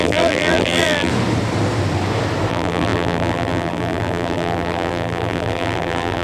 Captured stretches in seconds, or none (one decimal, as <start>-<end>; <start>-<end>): 1.1-2.5